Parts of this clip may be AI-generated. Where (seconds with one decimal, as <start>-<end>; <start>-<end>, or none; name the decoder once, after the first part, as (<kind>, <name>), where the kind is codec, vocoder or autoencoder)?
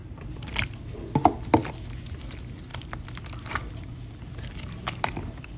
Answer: 0.0-0.9 (vocoder, BigVGAN v2); 2.7-5.6